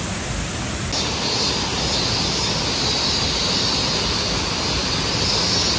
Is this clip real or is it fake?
real